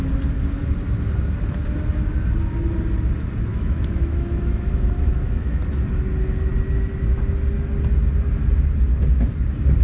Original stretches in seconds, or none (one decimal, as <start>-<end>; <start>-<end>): 0.0-3.5; 5.6-9.8